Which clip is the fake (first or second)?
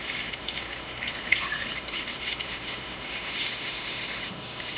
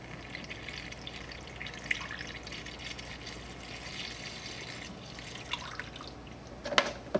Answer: first